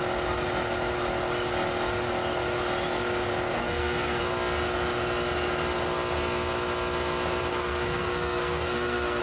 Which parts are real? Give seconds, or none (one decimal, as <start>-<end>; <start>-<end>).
0.0-3.6; 4.2-7.5